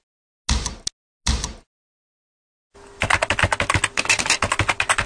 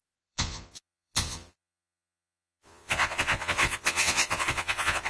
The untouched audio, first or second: first